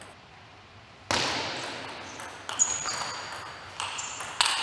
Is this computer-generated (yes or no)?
no